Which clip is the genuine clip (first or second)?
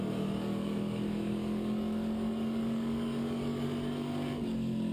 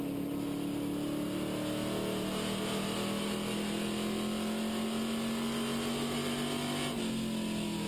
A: second